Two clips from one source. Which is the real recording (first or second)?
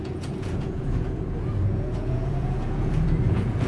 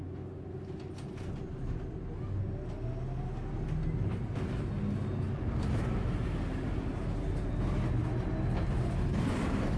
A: second